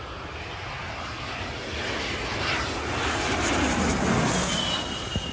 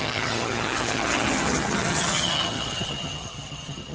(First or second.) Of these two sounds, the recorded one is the first